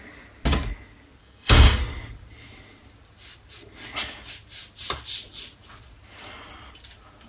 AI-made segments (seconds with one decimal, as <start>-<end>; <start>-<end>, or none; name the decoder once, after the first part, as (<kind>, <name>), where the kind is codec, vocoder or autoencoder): 1.2-1.8 (codec, DAC)